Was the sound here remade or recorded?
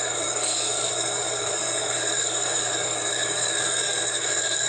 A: remade